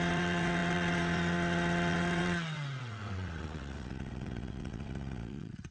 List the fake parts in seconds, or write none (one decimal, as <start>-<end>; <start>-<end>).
0.0-5.7